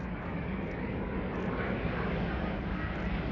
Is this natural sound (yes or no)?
no